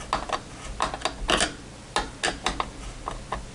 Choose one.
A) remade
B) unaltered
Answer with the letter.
B